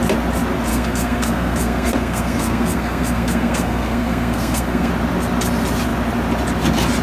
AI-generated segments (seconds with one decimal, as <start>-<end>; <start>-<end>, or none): 0.7-4.9